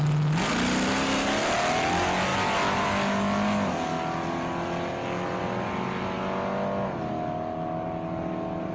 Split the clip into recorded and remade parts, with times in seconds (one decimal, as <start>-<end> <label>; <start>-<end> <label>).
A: 0.0-8.7 recorded